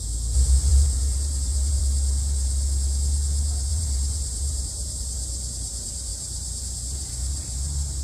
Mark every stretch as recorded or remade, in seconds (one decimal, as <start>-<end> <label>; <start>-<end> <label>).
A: 0.0-0.7 recorded; 0.7-1.8 remade; 1.8-3.7 recorded; 3.7-5.0 remade; 5.0-6.1 recorded; 6.1-6.6 remade; 6.6-8.0 recorded